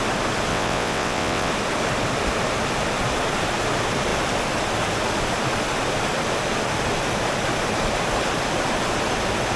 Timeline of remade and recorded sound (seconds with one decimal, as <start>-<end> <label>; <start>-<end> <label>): 0.0-0.5 recorded; 0.5-1.5 remade; 1.5-9.6 recorded

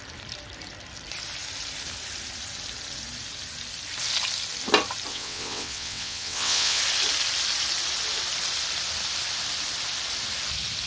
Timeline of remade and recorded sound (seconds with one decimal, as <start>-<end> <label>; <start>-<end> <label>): 0.0-5.1 recorded; 5.1-6.8 remade; 6.8-10.9 recorded

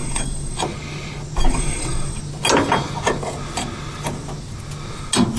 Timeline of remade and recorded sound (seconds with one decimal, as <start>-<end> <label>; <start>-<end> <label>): 0.0-0.6 remade; 0.6-1.5 recorded; 1.5-2.2 remade; 2.2-5.4 recorded

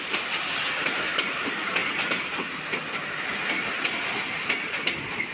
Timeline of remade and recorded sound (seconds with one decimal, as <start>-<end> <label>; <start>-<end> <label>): 0.0-5.3 recorded

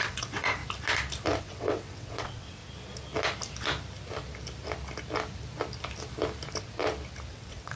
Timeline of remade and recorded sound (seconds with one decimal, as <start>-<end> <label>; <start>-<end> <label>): 0.0-0.6 remade; 0.6-1.4 recorded; 1.4-2.6 remade; 2.6-7.3 recorded; 7.3-7.8 remade

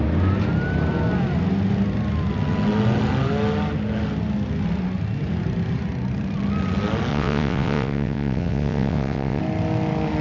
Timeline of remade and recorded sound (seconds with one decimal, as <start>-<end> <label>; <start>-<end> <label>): 0.0-7.1 recorded; 7.1-9.4 remade; 9.4-10.2 recorded